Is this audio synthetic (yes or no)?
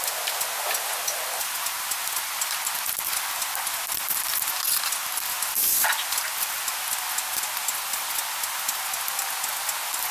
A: no